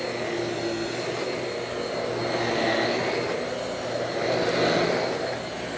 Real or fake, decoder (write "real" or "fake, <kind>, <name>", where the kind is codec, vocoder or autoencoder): real